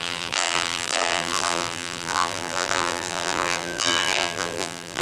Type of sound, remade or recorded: remade